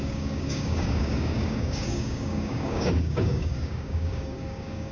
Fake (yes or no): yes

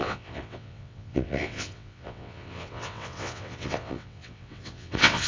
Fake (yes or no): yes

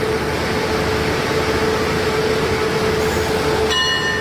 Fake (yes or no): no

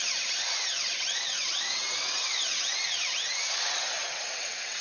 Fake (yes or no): yes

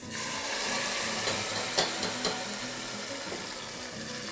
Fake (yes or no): no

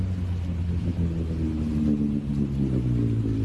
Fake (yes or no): no